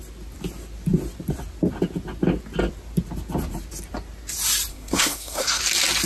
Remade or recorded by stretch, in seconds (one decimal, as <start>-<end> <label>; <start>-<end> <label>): 0.0-4.7 recorded; 4.7-5.6 remade; 5.6-6.1 recorded